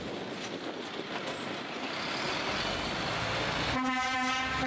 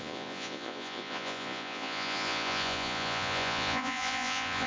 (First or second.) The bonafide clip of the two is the first